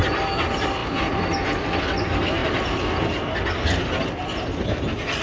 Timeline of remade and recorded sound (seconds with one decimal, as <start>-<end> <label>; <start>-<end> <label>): 0.0-5.2 recorded